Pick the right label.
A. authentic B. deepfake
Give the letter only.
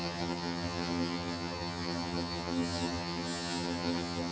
B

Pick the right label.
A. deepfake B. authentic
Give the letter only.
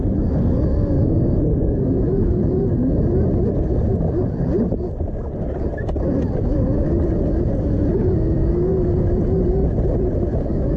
B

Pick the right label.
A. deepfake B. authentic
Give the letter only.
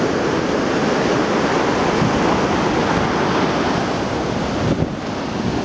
B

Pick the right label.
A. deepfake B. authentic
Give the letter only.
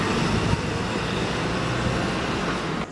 B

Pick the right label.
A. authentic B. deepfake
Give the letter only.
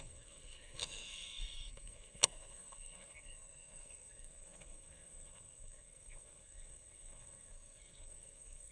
B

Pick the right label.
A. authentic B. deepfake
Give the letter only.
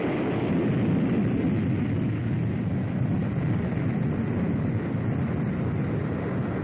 A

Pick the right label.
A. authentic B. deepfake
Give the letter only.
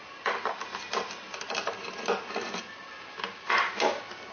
A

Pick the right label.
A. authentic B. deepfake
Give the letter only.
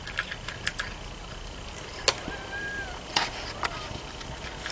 A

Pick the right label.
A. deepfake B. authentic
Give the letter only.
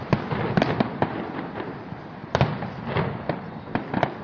B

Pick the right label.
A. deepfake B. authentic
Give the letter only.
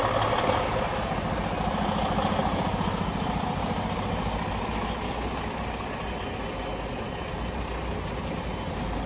B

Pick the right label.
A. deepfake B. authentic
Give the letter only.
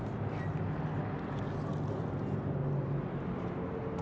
B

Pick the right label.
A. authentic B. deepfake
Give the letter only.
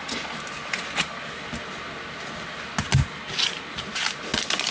A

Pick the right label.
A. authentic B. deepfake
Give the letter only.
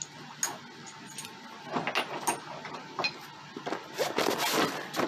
A